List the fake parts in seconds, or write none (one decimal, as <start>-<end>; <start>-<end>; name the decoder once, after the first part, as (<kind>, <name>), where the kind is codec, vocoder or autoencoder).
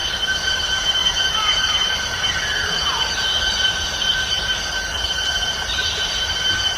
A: 0.0-0.6 (vocoder, BigVGAN v2); 1.0-4.3; 4.9-6.8